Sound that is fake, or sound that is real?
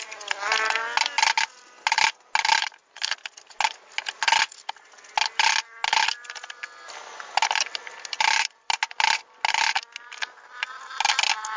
real